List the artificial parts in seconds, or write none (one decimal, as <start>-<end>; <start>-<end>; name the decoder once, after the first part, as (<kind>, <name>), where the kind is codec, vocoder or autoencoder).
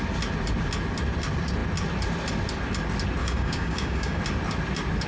3.2-4.2 (codec, DAC)